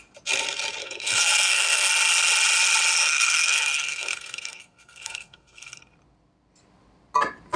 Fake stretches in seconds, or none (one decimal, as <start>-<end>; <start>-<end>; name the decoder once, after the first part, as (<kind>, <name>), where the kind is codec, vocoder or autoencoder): 0.8-1.9 (codec, SNAC); 3.0-5.8

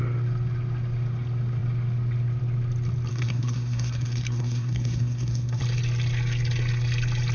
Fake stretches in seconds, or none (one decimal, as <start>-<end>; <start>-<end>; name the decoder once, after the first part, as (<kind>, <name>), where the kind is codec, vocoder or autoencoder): 3.1-5.6 (codec, SNAC)

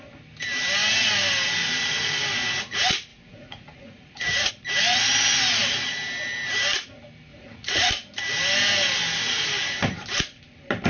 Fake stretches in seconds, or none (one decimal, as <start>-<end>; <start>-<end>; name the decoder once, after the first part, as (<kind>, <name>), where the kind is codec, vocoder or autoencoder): 3.1-4.5 (vocoder, Vocos); 7.3-7.9

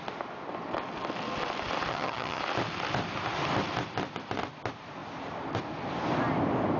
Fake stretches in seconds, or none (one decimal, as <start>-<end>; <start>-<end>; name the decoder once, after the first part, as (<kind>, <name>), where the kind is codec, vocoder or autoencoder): 1.9-2.4 (vocoder, HiFi-GAN)